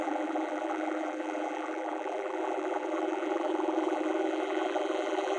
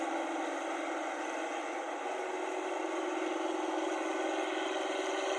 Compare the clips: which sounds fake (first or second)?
first